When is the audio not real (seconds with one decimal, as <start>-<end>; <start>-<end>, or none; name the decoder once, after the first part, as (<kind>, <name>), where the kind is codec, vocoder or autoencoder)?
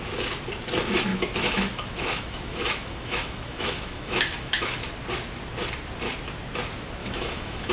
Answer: 1.1-4.9 (autoencoder, DAC-VAE); 7.0-7.7